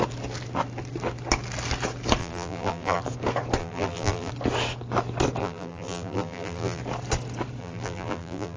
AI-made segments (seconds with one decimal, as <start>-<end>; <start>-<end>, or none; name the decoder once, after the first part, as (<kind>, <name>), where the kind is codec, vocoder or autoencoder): 2.2-3.0 (vocoder, BigVGAN v2); 3.6-4.3; 5.4-6.8; 7.6-8.6